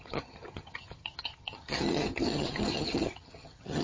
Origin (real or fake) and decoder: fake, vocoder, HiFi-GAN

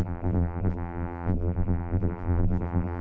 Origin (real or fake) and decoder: fake, vocoder, BigVGAN v2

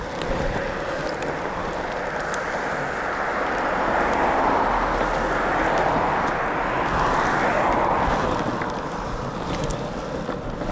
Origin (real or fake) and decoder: real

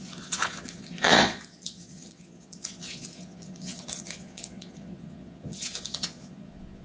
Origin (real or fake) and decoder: fake, vocoder, Vocos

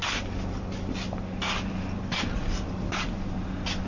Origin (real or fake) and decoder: real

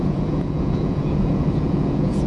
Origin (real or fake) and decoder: fake, vocoder, Vocos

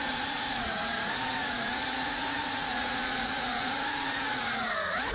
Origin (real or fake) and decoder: fake, vocoder, Vocos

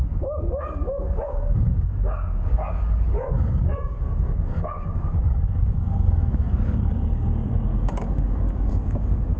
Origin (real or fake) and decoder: fake, codec, DAC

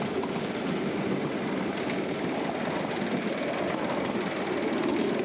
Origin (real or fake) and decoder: real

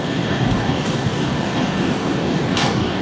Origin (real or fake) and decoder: fake, codec, DAC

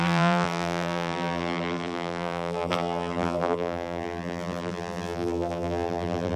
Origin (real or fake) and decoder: fake, vocoder, BigVGAN v2